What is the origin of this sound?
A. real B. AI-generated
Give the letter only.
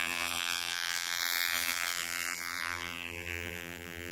B